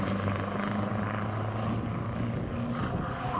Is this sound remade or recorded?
recorded